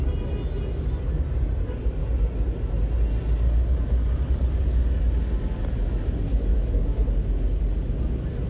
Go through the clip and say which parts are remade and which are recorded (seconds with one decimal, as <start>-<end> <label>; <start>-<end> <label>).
0.0-6.5 recorded; 6.5-7.1 remade; 7.1-8.5 recorded